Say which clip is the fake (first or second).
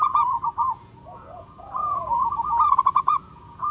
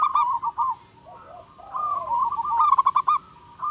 first